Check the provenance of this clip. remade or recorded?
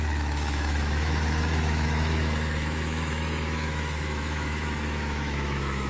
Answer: remade